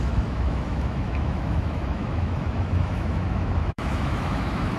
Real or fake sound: fake